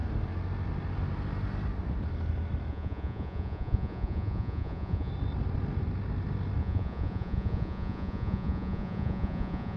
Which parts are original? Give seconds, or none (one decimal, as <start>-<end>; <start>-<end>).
0.0-2.7; 5.1-6.6